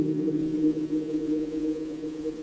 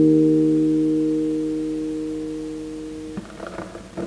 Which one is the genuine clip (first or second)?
second